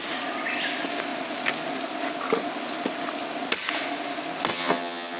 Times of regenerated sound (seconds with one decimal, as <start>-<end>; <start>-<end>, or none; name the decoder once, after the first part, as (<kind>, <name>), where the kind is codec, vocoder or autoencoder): 4.5-5.2 (vocoder, HiFi-GAN)